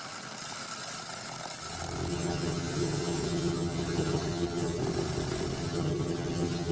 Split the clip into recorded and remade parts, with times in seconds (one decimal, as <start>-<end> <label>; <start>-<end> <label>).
0.0-2.1 recorded; 2.1-4.8 remade; 4.8-5.6 recorded; 5.6-6.7 remade